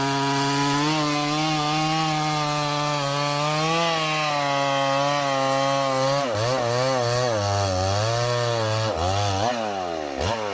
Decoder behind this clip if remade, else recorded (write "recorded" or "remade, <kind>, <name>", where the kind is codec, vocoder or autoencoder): recorded